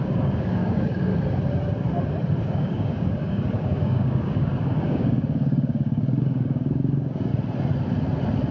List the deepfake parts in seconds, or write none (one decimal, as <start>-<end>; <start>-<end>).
0.0-1.1; 2.4-7.3